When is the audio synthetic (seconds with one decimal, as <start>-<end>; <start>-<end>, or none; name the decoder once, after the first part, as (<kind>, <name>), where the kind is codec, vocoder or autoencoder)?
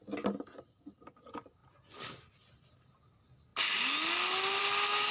none